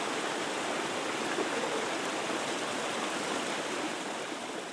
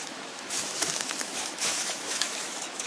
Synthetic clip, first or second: second